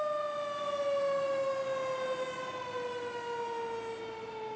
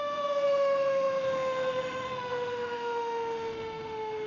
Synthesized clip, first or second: second